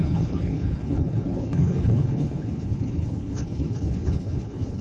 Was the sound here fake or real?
fake